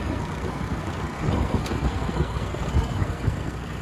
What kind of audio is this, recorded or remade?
remade